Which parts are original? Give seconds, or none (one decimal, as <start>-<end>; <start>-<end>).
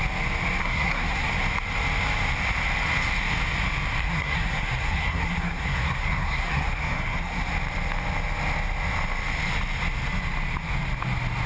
0.0-0.6; 1.3-4.0; 7.4-11.5